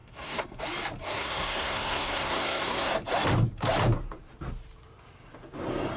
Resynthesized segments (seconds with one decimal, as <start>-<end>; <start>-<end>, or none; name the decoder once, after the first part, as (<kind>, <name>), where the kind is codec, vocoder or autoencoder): 0.0-0.6 (codec, SNAC); 1.0-2.9